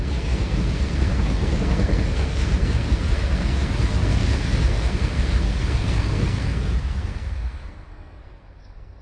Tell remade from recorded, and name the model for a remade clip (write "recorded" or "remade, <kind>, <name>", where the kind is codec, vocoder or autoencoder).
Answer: remade, codec, SNAC